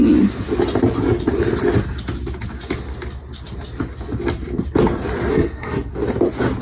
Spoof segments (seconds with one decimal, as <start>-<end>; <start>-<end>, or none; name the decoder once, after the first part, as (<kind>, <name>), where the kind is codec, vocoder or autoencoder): 5.3-5.9 (codec, SNAC)